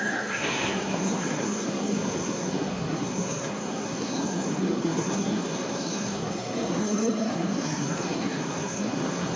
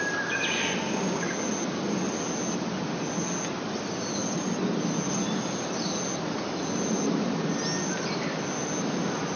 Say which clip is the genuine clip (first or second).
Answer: second